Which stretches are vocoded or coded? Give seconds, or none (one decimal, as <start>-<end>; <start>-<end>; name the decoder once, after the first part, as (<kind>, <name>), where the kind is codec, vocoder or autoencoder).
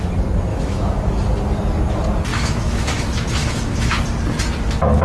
0.5-1.1 (autoencoder, DAC-VAE); 2.3-3.0; 3.4-4.0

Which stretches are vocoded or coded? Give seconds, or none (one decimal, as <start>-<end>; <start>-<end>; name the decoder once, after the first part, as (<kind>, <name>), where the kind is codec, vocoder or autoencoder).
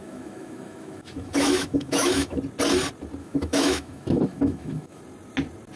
0.0-2.4 (autoencoder, DAC-VAE); 3.2-5.0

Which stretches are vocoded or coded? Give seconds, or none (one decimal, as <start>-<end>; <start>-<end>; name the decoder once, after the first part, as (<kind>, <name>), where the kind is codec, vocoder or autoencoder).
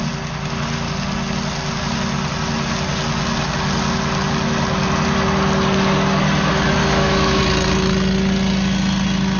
6.8-7.4 (autoencoder, DAC-VAE)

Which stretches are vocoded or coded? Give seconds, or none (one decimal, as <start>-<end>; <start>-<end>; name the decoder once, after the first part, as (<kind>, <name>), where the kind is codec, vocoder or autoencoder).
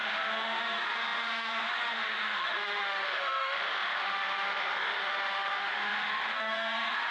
0.0-7.1 (autoencoder, DAC-VAE)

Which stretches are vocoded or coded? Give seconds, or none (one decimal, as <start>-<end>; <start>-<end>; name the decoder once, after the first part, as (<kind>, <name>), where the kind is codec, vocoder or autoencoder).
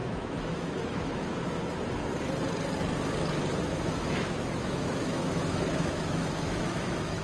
0.0-1.3 (autoencoder, DAC-VAE); 3.7-7.2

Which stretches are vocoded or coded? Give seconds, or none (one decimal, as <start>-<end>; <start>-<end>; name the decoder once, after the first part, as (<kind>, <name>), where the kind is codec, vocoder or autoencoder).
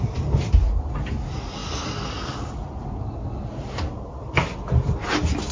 none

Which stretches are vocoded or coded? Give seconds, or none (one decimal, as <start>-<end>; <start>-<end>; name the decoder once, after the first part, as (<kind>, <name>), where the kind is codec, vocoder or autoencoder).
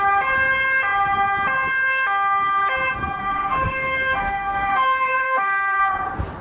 3.2-5.8 (autoencoder, DAC-VAE)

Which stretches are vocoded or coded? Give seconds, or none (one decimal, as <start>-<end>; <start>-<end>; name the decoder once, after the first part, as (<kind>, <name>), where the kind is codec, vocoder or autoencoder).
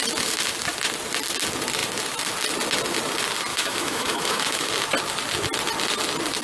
3.5-4.7 (autoencoder, DAC-VAE)